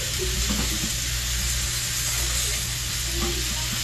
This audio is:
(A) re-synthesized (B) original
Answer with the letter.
B